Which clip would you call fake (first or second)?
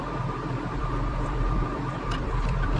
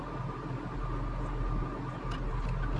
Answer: first